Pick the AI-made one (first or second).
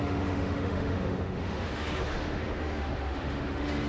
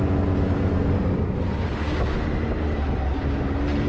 first